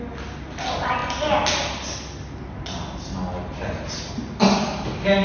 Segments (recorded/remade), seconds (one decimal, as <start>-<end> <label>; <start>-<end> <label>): 0.0-5.2 recorded